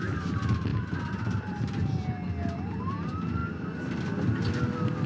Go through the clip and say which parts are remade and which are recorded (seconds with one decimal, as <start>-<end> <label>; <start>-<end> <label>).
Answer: 0.0-5.1 recorded